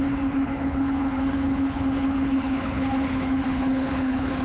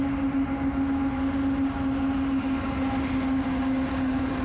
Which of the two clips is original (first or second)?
second